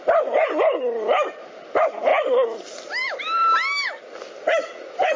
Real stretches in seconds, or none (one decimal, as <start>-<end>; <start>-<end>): 0.0-5.2